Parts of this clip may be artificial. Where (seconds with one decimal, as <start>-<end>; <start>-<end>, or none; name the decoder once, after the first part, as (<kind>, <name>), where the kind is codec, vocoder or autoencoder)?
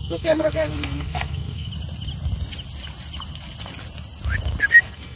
0.0-1.7 (codec, SNAC); 4.8-5.2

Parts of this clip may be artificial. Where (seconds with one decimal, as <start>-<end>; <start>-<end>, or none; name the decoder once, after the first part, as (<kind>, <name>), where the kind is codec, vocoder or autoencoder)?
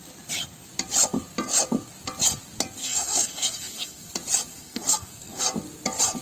2.8-4.1 (codec, SNAC); 4.5-5.4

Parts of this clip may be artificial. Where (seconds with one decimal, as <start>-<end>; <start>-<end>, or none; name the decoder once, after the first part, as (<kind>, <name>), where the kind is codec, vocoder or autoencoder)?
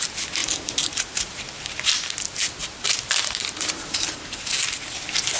0.4-1.9 (vocoder, BigVGAN v2); 2.6-4.3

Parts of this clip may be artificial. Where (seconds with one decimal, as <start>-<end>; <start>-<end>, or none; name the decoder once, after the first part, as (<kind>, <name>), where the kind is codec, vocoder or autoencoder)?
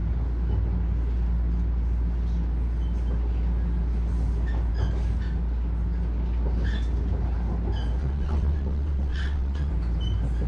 8.0-9.7 (vocoder, WaveNeXt)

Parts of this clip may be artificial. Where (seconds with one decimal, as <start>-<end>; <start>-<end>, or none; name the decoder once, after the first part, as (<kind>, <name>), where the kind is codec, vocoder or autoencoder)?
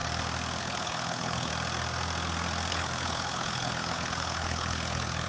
0.6-1.5 (codec, HILCodec); 2.7-5.3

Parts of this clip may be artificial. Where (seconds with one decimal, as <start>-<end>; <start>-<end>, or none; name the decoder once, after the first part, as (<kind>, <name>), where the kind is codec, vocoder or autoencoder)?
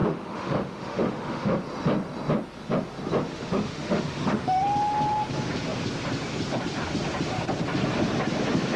0.0-1.6 (autoencoder, DAC-VAE); 3.3-4.6